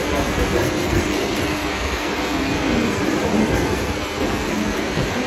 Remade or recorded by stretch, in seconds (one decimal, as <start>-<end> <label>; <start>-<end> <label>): 0.0-3.0 remade; 3.0-3.4 recorded; 3.4-5.3 remade